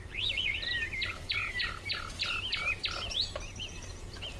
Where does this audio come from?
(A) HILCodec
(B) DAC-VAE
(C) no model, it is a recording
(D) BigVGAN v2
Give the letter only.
D